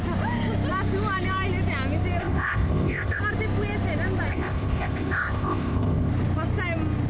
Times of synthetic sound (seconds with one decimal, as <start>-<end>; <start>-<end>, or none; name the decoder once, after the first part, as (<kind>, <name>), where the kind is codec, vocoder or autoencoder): 2.2-3.2 (codec, ZipCodec); 4.3-6.1